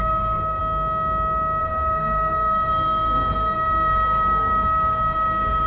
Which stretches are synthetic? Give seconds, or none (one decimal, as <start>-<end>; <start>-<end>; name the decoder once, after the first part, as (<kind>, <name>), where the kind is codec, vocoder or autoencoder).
0.0-0.6 (codec, SNAC); 1.6-5.7